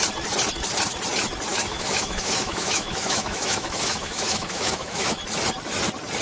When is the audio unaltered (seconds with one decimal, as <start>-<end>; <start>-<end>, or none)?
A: 0.0-1.5; 5.2-6.2